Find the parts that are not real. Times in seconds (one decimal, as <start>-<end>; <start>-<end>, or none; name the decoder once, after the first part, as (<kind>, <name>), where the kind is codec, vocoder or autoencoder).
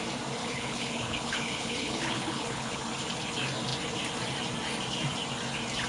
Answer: 0.4-2.8 (codec, HILCodec)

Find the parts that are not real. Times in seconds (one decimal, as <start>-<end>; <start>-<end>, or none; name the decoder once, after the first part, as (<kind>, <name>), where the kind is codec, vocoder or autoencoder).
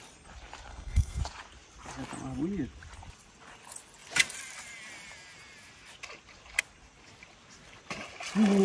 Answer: 0.7-1.2 (codec, SNAC)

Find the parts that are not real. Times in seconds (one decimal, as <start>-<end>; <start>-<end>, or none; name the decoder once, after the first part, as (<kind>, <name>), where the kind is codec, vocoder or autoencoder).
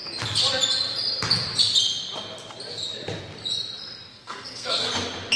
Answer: 4.1-4.9 (codec, SNAC)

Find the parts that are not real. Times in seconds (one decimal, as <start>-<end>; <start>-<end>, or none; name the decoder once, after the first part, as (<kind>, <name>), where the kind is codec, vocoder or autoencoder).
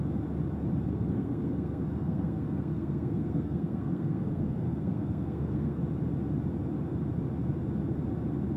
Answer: 0.9-5.8 (codec, SNAC)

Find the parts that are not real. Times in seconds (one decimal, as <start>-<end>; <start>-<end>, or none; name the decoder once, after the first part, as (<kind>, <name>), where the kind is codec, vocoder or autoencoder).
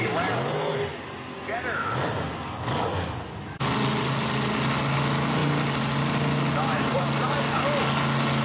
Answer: none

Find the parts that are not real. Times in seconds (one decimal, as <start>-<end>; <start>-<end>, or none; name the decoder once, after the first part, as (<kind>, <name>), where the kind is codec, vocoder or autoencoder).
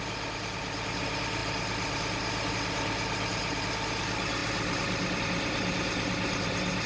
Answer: none